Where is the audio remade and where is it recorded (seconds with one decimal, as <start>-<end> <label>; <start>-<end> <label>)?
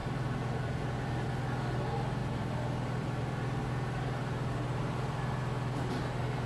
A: 0.0-1.3 remade; 1.3-2.2 recorded; 2.2-3.6 remade; 3.6-4.2 recorded; 4.2-5.4 remade; 5.4-6.5 recorded